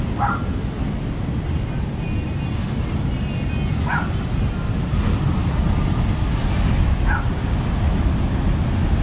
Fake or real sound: real